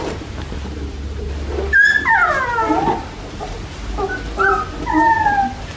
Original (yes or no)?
yes